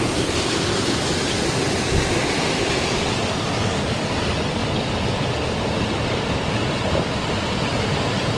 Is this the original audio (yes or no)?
yes